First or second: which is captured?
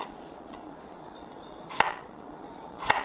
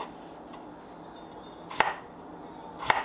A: second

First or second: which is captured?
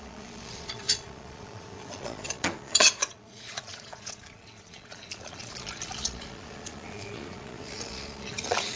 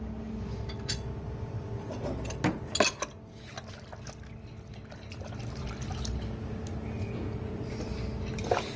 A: second